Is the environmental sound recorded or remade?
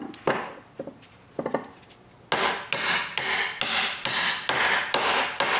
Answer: recorded